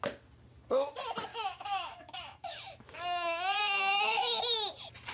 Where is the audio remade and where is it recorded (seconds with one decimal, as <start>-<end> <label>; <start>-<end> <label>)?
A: 0.0-1.3 recorded; 1.3-4.4 remade; 4.4-5.1 recorded